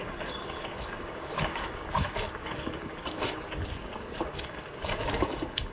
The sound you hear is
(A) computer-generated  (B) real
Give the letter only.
A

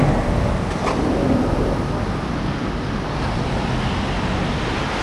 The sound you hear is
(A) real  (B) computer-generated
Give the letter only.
A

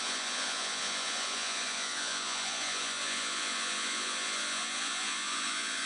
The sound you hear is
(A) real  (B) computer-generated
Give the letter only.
B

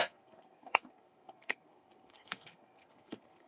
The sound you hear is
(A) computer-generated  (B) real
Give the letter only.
A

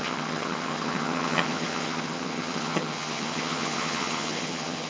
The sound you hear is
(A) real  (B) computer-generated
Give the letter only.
B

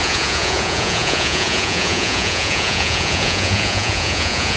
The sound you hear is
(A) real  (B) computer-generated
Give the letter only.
B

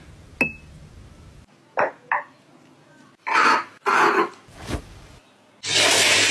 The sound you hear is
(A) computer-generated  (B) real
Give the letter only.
B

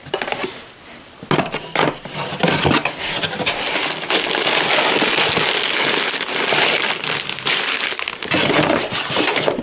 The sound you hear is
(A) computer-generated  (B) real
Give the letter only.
B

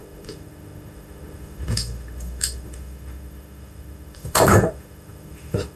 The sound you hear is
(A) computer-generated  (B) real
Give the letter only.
A